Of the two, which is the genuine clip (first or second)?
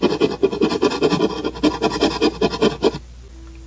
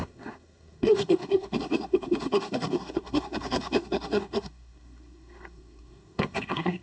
first